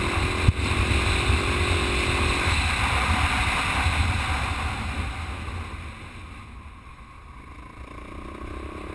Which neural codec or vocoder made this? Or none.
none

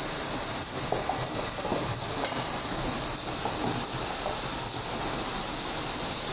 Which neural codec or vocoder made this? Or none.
vocoder, BigVGAN v2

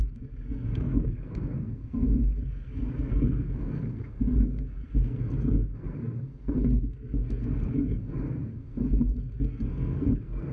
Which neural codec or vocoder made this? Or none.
codec, SNAC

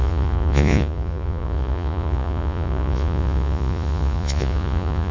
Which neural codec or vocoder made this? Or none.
vocoder, Vocos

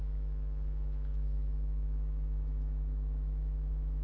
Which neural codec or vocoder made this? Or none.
autoencoder, DAC-VAE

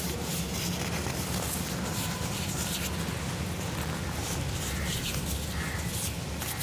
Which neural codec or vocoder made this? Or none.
none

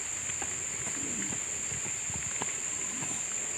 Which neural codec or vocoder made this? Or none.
none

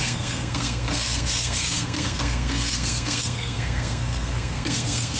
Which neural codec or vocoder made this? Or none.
codec, SNAC